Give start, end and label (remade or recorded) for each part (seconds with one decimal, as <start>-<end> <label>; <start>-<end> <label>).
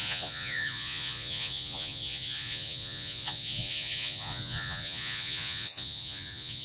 0.0-6.6 remade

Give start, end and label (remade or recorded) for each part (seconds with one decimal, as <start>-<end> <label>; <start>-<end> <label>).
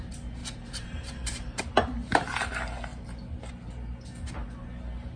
0.0-0.4 recorded; 0.4-1.6 remade; 1.6-2.0 recorded; 2.0-2.5 remade; 2.5-5.2 recorded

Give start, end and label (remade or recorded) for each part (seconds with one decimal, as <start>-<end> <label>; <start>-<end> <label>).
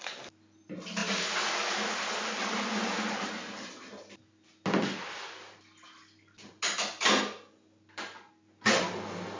0.0-9.4 recorded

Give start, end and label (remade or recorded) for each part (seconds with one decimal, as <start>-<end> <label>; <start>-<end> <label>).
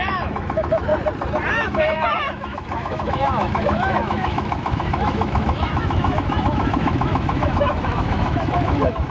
0.0-0.9 remade; 0.9-1.5 recorded; 1.5-9.1 remade